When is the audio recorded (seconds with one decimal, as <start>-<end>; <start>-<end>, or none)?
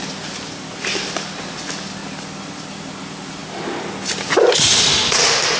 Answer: 0.0-5.6